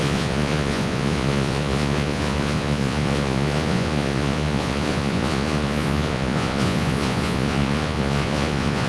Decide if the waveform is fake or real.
fake